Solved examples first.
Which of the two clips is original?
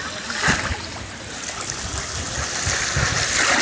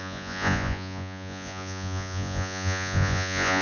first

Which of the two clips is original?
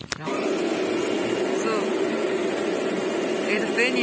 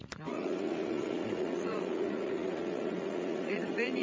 first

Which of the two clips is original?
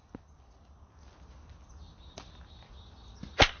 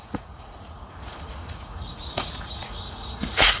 first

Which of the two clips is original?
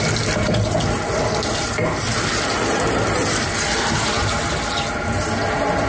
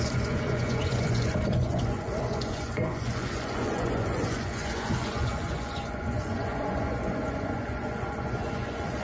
first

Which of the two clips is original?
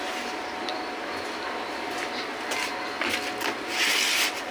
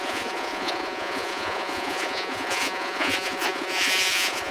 first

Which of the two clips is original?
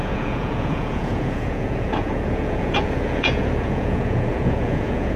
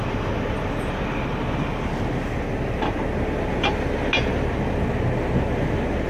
second